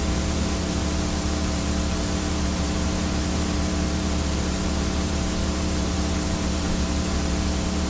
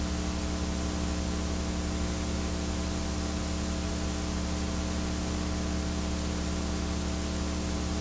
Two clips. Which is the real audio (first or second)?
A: second